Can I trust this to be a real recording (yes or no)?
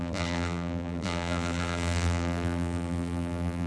no